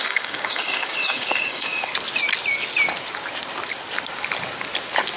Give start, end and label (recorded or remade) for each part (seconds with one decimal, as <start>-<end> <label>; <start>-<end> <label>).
0.0-1.9 remade; 1.9-5.2 recorded